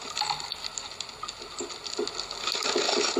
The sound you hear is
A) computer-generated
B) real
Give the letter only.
B